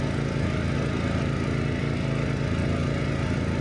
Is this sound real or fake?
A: real